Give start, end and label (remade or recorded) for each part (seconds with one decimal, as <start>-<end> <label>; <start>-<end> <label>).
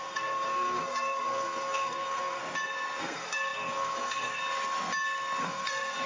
0.0-2.4 remade; 2.4-3.0 recorded; 3.0-4.4 remade; 4.4-5.4 recorded; 5.4-6.1 remade